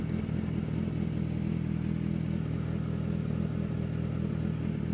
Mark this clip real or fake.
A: real